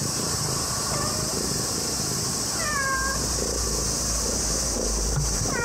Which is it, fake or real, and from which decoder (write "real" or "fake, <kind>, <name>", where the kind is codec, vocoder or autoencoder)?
fake, vocoder, BigVGAN v2